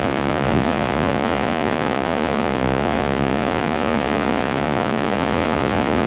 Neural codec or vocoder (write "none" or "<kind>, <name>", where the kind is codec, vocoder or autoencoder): vocoder, Vocos